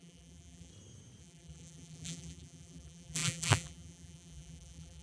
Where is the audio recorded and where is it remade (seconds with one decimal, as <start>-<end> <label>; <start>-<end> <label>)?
0.0-0.7 remade; 0.7-1.2 recorded; 1.2-5.0 remade